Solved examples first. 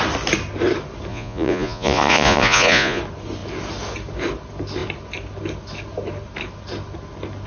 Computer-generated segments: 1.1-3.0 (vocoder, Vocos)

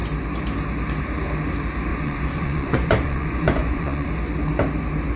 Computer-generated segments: 1.9-4.1 (vocoder, Vocos)

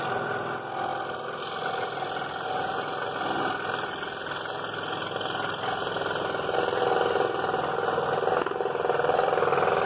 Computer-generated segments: none

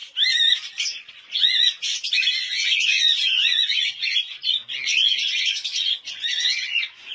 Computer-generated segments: 1.0-7.1 (vocoder, Vocos)

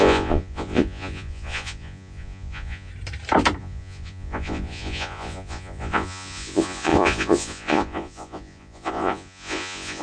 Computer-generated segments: 0.0-2.9 (vocoder, Vocos); 3.6-10.0

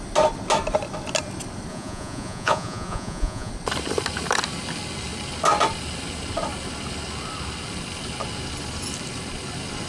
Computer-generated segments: 1.7-3.5 (vocoder, Vocos)

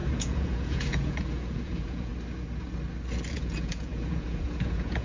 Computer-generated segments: 0.0-2.1 (vocoder, Vocos); 3.3-5.0

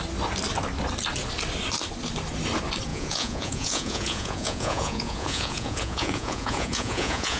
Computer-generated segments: 2.9-7.4 (vocoder, Vocos)